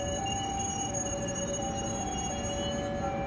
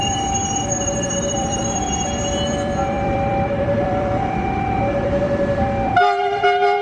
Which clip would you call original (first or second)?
first